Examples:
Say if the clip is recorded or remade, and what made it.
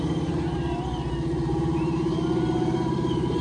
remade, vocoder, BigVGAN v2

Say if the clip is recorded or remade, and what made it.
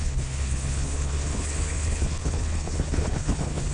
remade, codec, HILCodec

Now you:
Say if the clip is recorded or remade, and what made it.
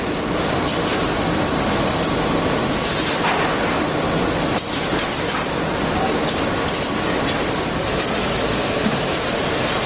recorded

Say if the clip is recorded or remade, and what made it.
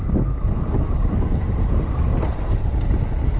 recorded